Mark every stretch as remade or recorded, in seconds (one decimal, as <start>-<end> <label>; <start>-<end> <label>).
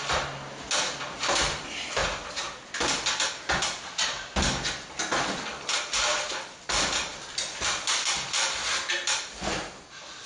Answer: 0.0-10.3 recorded